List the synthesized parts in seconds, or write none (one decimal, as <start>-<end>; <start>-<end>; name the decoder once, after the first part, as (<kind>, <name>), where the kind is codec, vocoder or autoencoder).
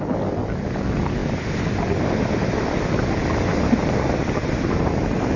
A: none